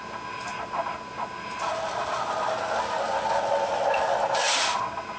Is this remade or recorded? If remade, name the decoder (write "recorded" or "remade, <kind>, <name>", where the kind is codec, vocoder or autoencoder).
recorded